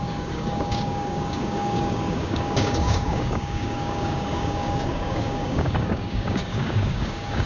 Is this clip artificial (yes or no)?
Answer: yes